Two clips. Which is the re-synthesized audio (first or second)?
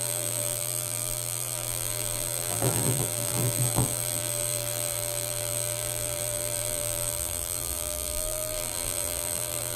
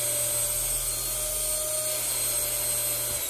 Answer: first